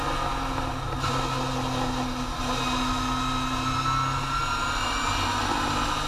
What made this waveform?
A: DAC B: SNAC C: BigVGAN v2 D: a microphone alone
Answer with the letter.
D